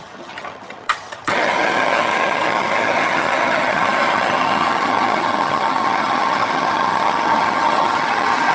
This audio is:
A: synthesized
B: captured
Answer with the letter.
A